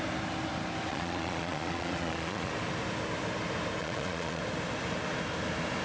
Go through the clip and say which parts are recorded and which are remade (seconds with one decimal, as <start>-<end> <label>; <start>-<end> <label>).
0.0-0.9 recorded; 0.9-2.5 remade; 2.5-3.8 recorded; 3.8-4.4 remade; 4.4-5.8 recorded